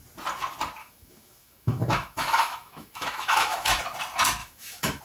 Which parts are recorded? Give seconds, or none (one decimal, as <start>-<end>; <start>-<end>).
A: 0.0-0.8; 3.8-4.4